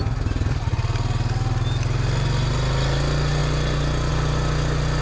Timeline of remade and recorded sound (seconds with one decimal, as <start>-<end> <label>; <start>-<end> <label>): 0.0-5.0 recorded